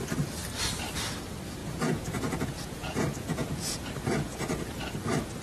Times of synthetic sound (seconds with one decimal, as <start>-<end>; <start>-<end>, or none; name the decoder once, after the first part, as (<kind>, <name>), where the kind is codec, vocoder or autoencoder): 1.6-4.8 (vocoder, Vocos)